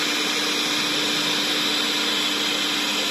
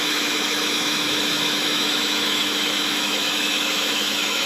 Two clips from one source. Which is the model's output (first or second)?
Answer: second